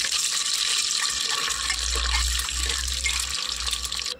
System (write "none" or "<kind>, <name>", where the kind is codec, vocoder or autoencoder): none